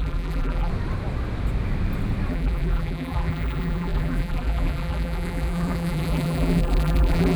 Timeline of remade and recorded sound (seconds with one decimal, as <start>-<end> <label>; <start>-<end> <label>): 0.0-0.7 remade; 0.7-2.3 recorded; 2.3-7.4 remade